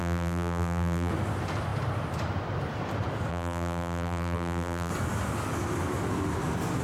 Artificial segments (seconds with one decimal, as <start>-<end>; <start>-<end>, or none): 0.0-1.1; 3.3-4.9